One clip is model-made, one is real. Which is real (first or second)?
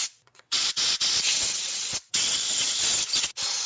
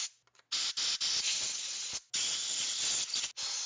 second